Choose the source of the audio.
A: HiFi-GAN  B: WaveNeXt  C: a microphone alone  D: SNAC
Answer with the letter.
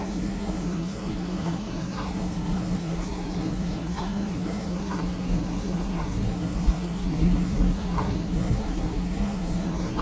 D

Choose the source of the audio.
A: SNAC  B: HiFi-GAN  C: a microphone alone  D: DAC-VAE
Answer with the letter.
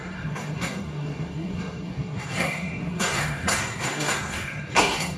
A